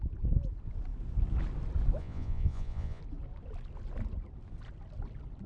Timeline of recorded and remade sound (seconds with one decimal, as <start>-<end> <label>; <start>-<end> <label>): 0.0-2.0 recorded; 2.0-3.0 remade; 3.0-5.5 recorded